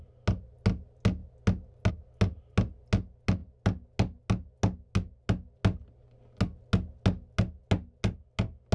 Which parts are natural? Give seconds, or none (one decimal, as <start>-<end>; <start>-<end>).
0.0-8.7